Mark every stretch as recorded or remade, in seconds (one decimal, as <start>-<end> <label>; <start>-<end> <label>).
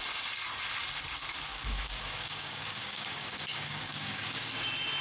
0.0-1.5 recorded; 1.5-4.5 remade; 4.5-5.0 recorded